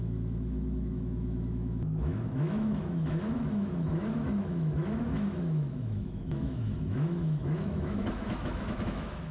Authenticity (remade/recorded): remade